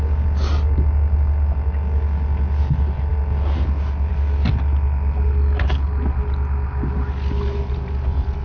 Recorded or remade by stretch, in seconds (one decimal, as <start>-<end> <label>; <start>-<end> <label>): 0.0-8.4 recorded